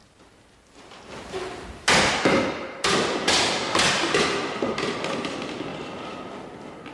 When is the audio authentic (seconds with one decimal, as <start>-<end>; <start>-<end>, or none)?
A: 0.0-5.7; 6.3-6.9